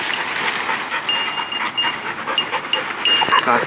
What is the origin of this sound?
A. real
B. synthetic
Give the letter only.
A